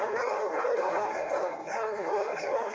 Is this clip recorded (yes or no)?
no